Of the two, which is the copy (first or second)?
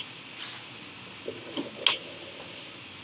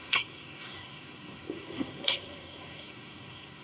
second